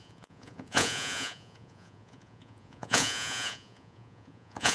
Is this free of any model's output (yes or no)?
no